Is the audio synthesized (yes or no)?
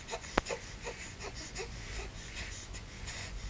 yes